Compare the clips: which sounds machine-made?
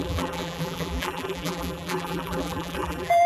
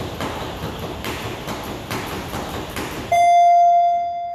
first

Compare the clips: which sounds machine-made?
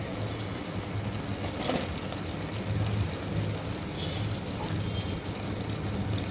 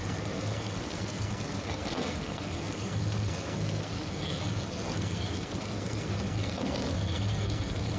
second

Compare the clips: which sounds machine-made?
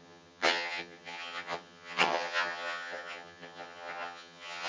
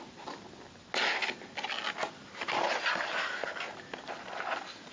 first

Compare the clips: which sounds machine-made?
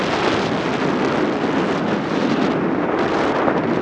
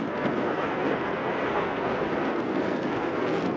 second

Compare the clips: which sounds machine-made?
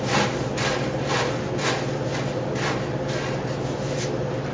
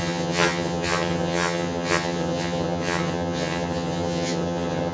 second